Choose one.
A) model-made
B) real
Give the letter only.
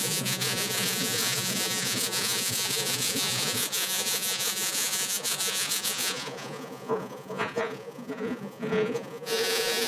A